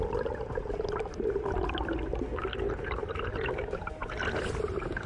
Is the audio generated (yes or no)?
no